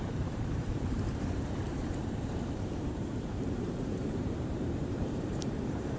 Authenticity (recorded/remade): remade